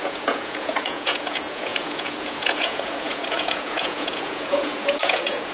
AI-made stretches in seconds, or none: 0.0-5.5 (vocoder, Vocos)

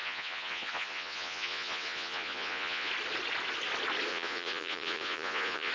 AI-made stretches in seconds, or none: 0.0-2.9 (vocoder, Vocos); 4.1-5.7

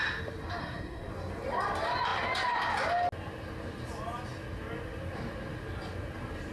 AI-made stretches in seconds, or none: 0.6-1.1 (codec, SNAC)

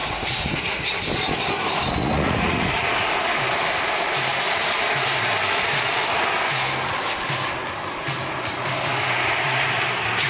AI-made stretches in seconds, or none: 0.0-0.9 (vocoder, Vocos); 2.0-3.2

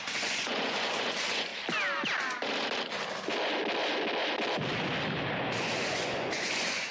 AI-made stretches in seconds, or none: 0.0-1.5 (vocoder, Vocos); 5.6-6.9